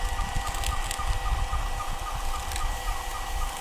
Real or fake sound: real